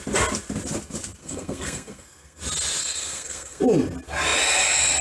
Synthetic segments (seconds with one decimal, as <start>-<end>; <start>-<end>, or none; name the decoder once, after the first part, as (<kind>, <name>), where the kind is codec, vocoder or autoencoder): 1.2-2.4 (codec, SNAC); 2.8-3.6